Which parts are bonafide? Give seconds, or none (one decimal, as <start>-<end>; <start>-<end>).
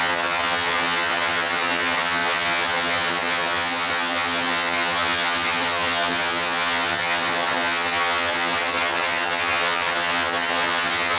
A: none